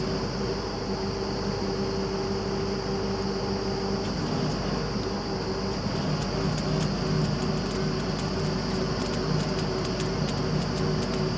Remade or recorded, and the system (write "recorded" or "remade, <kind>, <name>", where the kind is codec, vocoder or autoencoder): recorded